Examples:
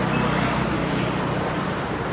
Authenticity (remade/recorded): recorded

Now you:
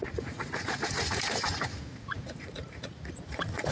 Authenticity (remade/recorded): remade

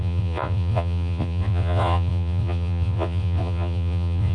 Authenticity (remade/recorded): remade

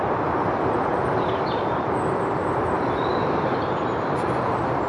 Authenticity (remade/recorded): remade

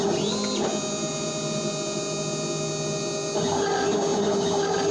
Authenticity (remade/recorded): recorded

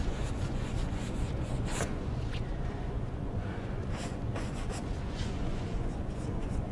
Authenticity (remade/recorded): remade